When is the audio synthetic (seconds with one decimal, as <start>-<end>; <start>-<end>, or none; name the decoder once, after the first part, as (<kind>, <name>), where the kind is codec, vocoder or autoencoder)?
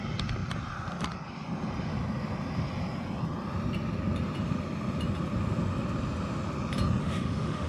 7.0-7.7 (autoencoder, DAC-VAE)